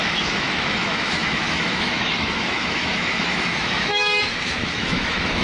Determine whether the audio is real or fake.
fake